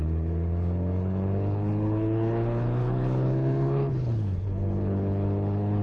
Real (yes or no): no